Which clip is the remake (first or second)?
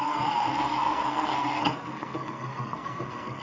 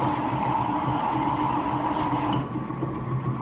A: first